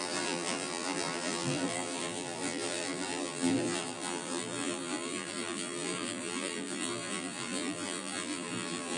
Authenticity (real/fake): fake